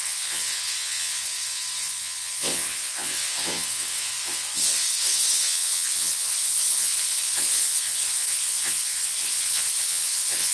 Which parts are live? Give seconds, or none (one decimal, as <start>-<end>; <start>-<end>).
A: none